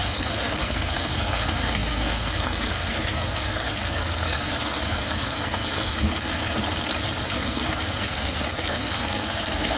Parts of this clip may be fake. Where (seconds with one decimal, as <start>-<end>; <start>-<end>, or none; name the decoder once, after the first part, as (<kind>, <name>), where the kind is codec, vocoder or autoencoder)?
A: 0.0-6.4 (codec, SNAC); 7.3-9.8